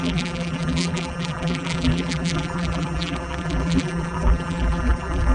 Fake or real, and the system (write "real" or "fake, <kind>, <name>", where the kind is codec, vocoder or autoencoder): fake, vocoder, BigVGAN v2